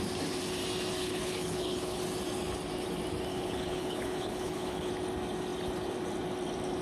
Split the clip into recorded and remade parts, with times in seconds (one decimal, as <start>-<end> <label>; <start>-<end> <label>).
0.0-1.0 recorded; 1.0-2.0 remade; 2.0-3.3 recorded; 3.3-4.9 remade; 4.9-6.8 recorded